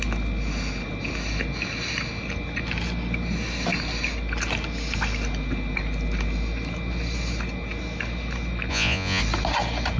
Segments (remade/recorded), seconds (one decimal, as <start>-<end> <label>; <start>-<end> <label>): 0.0-8.7 recorded; 8.7-9.2 remade; 9.2-10.0 recorded